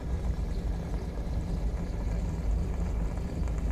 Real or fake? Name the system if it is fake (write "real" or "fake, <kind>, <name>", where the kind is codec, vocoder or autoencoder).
fake, vocoder, BigVGAN v2